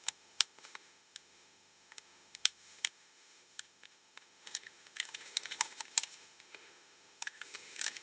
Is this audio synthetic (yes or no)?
yes